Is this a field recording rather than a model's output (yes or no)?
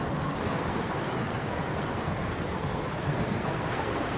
no